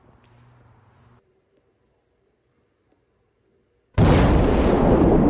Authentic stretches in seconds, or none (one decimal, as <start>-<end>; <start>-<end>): 1.7-5.3